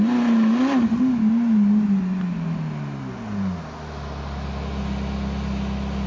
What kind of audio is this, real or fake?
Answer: real